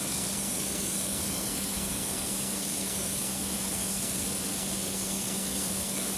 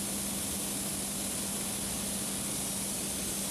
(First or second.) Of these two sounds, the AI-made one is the first